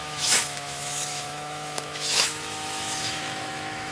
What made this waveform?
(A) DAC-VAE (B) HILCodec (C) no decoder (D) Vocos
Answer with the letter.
A